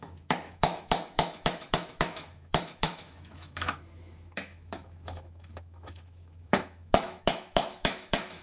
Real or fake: fake